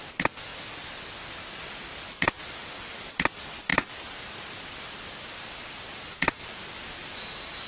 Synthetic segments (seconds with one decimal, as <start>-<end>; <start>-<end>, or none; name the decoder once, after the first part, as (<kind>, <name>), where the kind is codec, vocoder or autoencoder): none